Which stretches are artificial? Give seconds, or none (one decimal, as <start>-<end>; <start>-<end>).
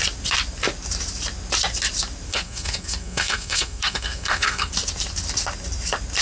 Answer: 2.3-4.7